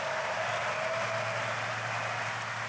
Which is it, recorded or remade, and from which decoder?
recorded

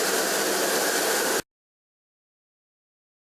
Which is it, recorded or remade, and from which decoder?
recorded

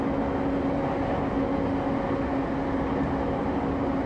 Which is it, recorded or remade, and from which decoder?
recorded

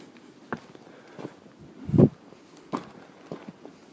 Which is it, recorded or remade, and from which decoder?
recorded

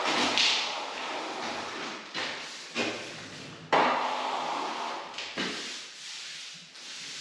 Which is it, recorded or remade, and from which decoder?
recorded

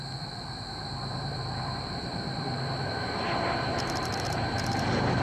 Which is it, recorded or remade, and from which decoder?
remade, vocoder, BigVGAN v2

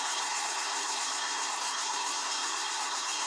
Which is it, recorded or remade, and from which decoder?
remade, codec, SNAC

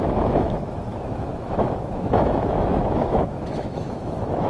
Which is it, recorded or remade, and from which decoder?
remade, autoencoder, DAC-VAE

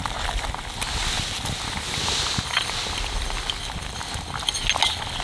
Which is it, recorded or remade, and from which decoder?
recorded